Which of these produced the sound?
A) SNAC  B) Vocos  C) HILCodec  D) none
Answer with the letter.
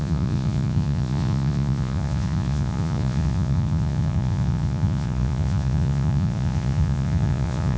B